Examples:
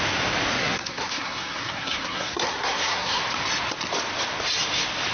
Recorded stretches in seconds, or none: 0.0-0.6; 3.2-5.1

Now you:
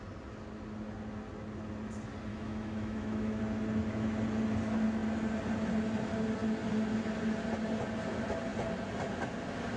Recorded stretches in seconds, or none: 0.0-2.3; 3.4-9.8

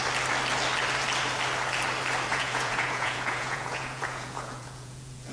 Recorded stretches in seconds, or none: 0.0-2.3

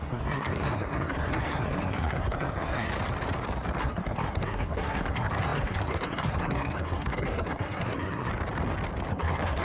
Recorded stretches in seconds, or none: 2.9-3.8; 8.3-9.1

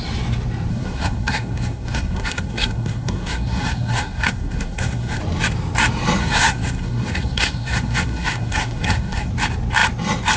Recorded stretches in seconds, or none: 0.0-0.7; 5.2-6.2; 9.3-10.4

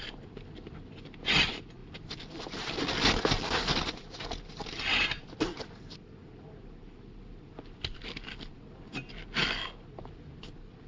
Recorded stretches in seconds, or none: 0.0-10.9